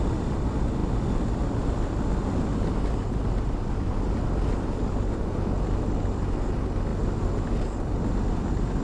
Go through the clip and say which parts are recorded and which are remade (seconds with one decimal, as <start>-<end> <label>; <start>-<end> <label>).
0.0-8.8 recorded